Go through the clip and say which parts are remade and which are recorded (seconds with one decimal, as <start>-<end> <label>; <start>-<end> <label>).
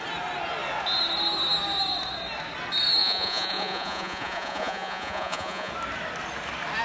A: 0.0-3.0 recorded; 3.0-5.7 remade; 5.7-6.8 recorded